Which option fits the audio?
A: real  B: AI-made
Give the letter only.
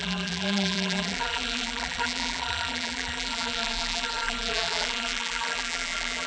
B